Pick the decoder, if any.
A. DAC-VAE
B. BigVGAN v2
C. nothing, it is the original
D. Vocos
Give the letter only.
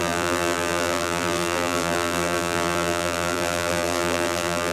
B